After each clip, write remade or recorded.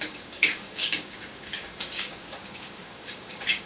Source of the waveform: remade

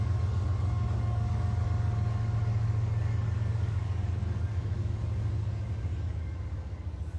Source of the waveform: remade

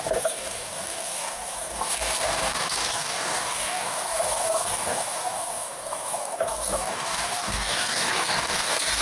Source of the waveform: remade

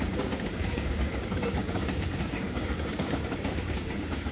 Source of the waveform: remade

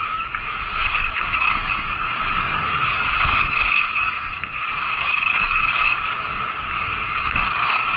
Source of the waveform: remade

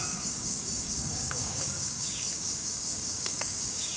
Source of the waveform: remade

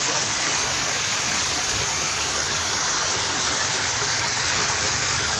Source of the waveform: remade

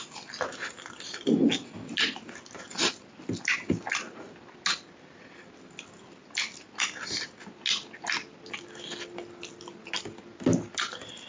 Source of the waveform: recorded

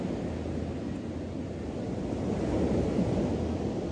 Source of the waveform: recorded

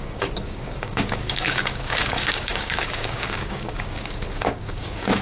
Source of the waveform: remade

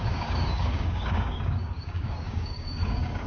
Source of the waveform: remade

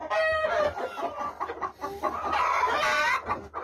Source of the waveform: recorded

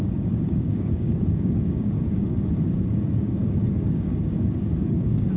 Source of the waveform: remade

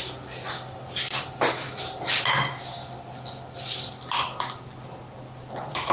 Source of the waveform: recorded